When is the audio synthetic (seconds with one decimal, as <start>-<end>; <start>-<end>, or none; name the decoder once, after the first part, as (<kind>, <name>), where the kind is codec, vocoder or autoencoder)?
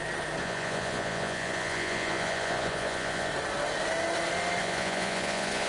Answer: 0.4-3.3 (vocoder, Vocos); 4.6-5.7